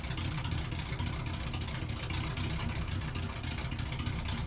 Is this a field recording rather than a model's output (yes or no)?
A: yes